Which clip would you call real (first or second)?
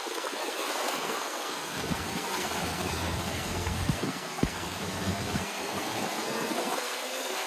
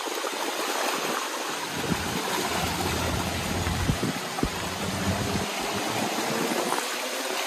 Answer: second